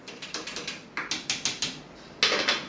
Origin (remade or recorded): recorded